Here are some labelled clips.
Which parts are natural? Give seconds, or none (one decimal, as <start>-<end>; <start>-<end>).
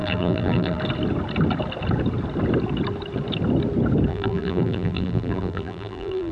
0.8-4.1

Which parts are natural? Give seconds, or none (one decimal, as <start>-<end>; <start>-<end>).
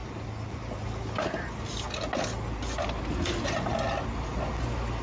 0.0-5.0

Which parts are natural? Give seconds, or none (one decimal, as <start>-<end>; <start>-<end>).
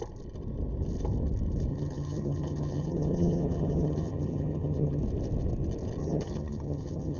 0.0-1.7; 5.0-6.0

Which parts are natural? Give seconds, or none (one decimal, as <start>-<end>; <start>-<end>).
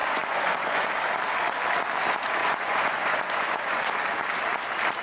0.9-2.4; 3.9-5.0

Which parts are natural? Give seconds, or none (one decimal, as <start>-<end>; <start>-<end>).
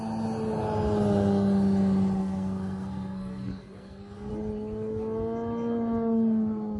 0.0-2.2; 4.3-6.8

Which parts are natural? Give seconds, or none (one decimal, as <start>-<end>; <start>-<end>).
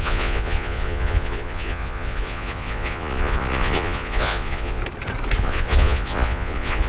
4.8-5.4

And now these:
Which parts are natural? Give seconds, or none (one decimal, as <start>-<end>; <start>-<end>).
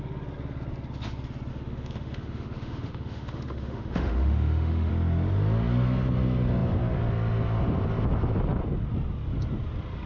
0.0-1.5; 4.9-10.1